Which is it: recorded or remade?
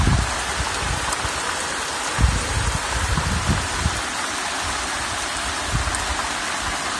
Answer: recorded